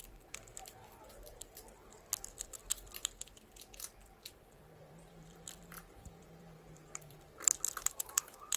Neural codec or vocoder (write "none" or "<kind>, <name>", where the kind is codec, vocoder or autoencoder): vocoder, BigVGAN v2